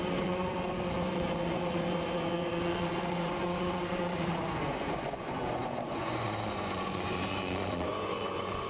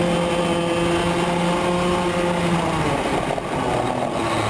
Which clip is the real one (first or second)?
second